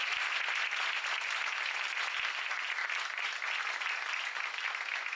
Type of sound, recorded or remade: recorded